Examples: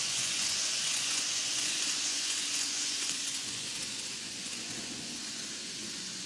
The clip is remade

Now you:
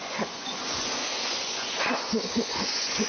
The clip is remade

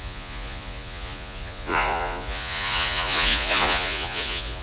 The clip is remade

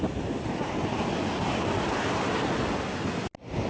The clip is recorded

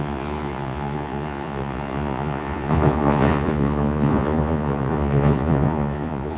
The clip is remade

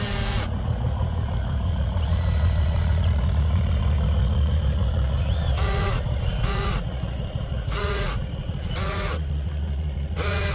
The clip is remade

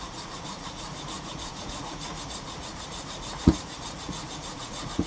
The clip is remade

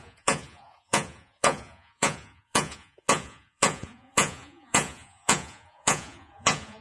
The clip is remade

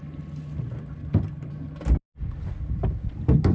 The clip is recorded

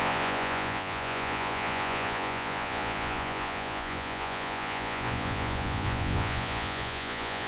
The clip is remade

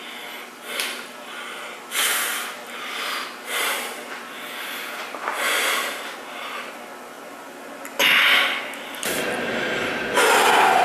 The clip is recorded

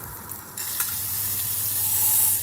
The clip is recorded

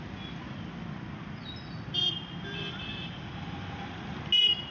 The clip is recorded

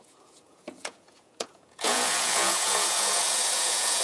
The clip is remade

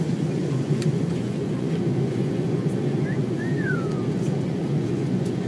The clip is remade